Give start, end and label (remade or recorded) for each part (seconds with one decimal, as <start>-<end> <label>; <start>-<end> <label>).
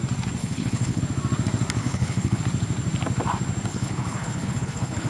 0.0-0.4 recorded; 0.4-1.0 remade; 1.0-1.8 recorded; 1.8-2.4 remade; 2.4-3.7 recorded; 3.7-5.1 remade